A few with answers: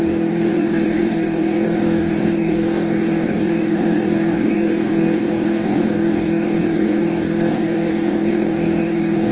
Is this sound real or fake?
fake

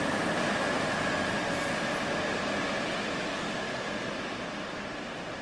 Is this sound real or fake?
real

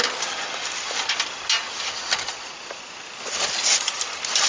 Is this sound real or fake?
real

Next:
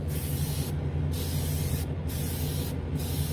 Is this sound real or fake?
real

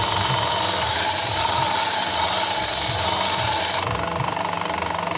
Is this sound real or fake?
real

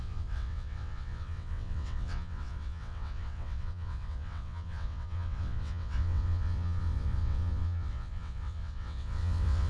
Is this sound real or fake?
fake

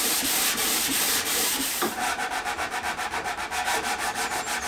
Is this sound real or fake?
fake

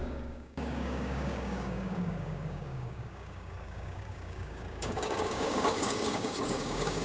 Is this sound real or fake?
fake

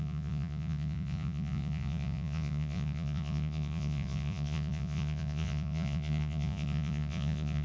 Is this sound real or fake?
fake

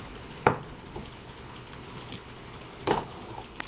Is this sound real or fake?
fake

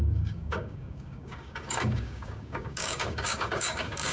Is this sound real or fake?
fake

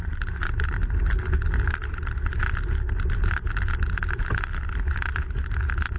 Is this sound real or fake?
real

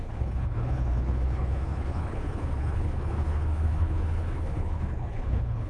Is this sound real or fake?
fake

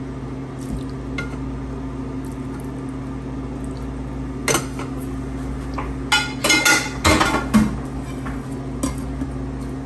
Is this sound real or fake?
real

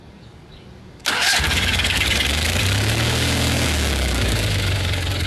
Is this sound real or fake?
fake